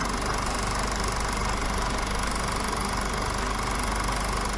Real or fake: real